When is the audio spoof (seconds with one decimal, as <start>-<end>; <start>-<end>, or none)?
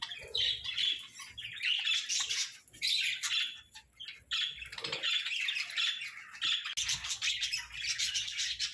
none